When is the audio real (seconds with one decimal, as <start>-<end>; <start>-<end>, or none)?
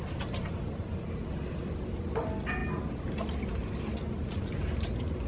0.0-5.3